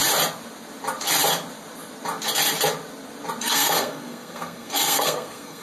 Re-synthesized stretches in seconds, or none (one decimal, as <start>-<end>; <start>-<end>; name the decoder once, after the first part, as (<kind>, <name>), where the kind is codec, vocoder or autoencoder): 3.4-5.6 (codec, SNAC)